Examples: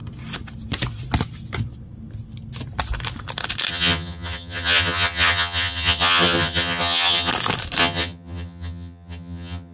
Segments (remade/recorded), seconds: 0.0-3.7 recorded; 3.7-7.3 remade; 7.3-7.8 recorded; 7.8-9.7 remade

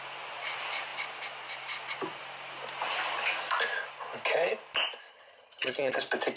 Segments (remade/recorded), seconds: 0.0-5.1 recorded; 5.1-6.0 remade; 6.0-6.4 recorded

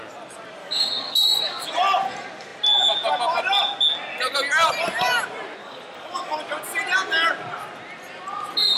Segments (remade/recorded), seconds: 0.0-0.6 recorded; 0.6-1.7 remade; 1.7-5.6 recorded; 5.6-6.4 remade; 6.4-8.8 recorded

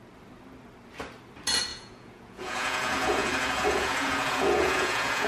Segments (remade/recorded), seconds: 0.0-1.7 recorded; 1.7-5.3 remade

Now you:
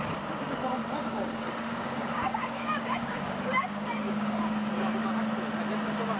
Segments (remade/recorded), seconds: 0.0-1.0 recorded; 1.0-4.7 remade; 4.7-6.2 recorded